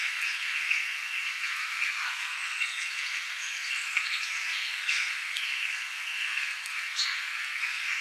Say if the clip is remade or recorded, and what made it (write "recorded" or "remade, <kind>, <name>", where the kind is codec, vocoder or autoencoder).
remade, codec, SNAC